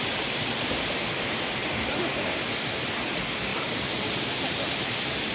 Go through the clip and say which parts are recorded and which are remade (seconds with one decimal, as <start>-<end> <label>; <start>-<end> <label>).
0.0-1.6 recorded; 1.6-2.2 remade; 2.2-3.5 recorded; 3.5-5.3 remade